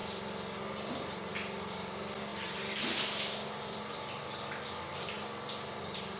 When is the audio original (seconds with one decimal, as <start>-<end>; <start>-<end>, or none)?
0.0-6.2